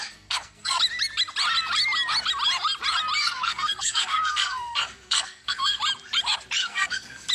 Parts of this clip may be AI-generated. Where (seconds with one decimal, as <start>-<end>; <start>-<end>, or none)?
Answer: 0.0-0.8; 3.2-5.8; 6.6-7.3